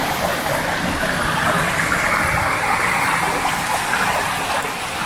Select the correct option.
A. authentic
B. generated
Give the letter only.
A